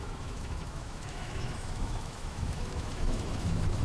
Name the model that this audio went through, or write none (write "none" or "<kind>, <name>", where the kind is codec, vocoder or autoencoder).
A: autoencoder, DAC-VAE